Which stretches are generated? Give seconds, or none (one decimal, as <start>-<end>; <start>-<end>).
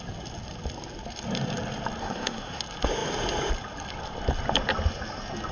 2.0-2.6